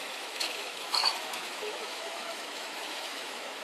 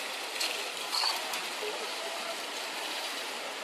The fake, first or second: first